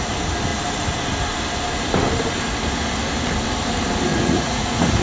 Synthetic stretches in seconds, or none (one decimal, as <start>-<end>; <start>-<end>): 4.1-5.0